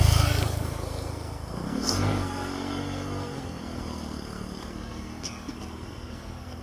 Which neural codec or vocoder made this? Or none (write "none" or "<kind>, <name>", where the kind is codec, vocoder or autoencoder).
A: codec, SNAC